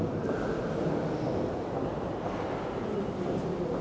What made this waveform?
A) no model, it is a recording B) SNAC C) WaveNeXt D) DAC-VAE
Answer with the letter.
A